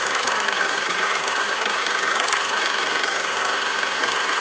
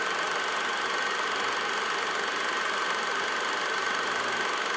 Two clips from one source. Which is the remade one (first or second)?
first